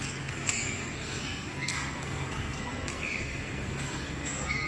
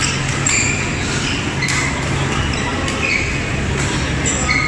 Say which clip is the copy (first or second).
first